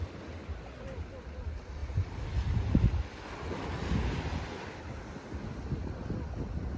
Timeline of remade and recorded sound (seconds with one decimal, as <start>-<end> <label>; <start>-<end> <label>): 0.0-6.8 recorded